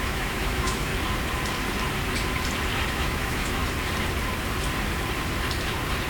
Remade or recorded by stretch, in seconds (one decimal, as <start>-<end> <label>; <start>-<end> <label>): 0.0-0.9 remade; 0.9-2.9 recorded; 2.9-3.6 remade; 3.6-6.1 recorded